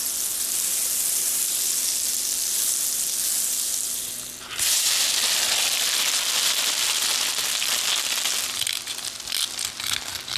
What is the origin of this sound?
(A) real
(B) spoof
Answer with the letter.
A